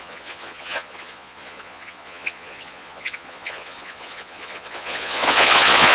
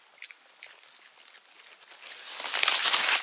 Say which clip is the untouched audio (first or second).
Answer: second